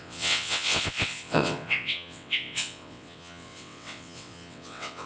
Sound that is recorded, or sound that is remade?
remade